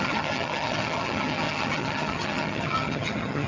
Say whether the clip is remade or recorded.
remade